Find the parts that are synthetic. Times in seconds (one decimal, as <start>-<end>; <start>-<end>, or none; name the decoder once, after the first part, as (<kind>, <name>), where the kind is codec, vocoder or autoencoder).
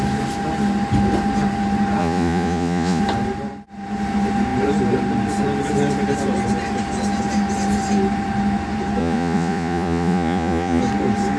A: 2.0-3.0 (vocoder, Vocos); 9.0-10.8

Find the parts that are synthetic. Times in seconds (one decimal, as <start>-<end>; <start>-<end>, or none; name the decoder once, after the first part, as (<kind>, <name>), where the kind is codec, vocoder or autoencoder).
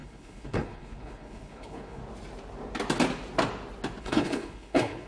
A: 0.0-2.0 (codec, HILCodec); 4.0-5.1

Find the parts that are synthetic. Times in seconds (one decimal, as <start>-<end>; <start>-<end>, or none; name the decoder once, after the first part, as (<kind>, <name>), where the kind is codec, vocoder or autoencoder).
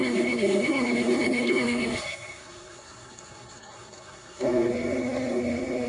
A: 0.0-5.9 (codec, SNAC)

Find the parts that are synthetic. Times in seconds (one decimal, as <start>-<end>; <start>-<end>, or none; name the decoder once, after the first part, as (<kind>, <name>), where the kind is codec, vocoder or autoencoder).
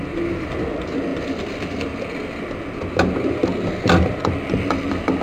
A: 1.1-1.7 (vocoder, BigVGAN v2); 3.4-5.2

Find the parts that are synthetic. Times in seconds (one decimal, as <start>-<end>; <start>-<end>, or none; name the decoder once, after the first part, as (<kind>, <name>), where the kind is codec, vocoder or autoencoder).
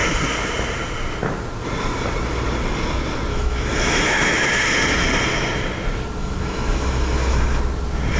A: 3.3-4.6 (autoencoder, DAC-VAE); 6.2-7.6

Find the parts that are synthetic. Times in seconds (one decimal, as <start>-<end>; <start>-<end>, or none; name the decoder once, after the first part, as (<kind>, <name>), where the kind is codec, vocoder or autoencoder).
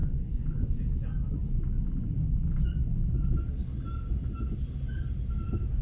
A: 0.0-0.8 (vocoder, Vocos)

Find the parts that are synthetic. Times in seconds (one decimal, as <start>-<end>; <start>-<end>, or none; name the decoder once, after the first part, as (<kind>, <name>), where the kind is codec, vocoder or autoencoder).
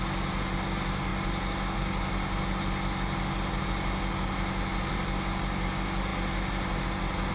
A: none